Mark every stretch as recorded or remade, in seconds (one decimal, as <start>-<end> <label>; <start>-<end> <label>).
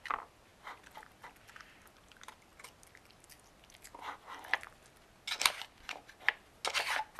0.0-7.2 recorded